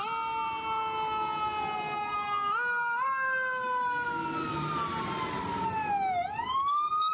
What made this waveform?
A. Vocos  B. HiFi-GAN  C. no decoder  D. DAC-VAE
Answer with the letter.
C